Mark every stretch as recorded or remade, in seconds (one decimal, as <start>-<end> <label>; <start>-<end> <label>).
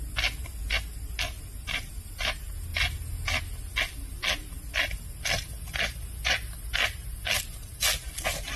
0.0-8.6 recorded